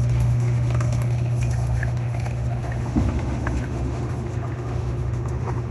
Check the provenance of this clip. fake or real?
fake